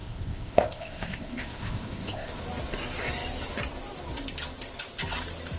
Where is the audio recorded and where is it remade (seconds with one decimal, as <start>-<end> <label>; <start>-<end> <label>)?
0.0-2.4 remade; 2.4-5.6 recorded